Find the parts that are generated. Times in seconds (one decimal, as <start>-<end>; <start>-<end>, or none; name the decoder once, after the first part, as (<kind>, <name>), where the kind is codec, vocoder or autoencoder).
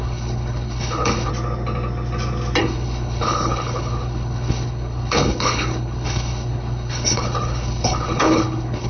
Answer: 0.0-1.3 (codec, HILCodec); 2.6-8.9